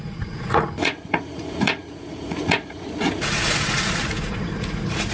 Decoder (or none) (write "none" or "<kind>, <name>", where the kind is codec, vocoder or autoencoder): vocoder, Vocos